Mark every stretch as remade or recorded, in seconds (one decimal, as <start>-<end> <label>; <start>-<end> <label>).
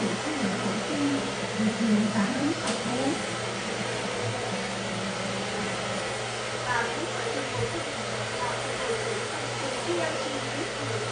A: 0.0-0.5 recorded; 0.5-3.1 remade; 3.1-11.1 recorded